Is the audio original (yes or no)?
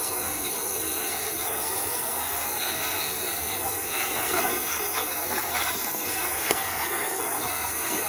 no